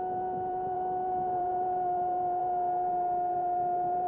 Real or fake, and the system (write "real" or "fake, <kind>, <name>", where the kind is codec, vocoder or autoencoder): fake, vocoder, BigVGAN v2